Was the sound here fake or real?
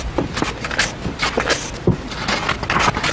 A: real